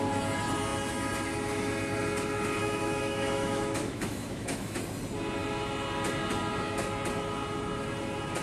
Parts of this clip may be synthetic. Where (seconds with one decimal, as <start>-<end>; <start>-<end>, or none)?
2.6-4.8